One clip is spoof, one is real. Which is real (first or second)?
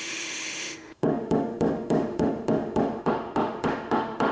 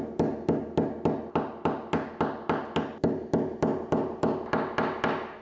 second